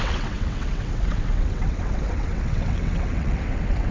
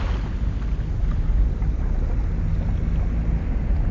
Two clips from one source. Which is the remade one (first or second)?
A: first